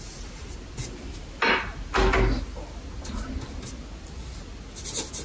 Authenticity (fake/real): real